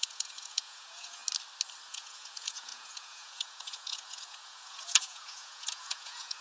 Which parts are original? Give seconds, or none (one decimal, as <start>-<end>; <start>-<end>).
1.2-1.9